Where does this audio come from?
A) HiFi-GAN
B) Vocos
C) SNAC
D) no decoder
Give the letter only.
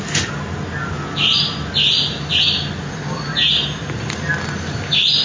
D